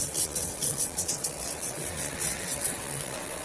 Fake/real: fake